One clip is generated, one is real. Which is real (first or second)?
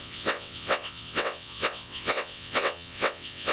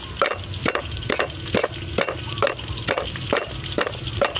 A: second